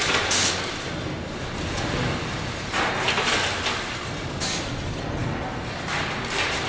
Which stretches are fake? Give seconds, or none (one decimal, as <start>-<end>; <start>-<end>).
none